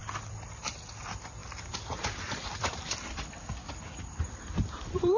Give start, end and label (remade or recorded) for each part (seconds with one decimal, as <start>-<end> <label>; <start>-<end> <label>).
0.0-5.2 recorded